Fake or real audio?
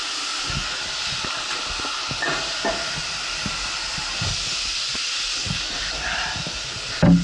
real